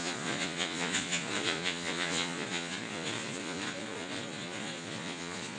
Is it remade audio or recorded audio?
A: remade